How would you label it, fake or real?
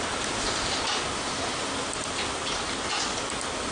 real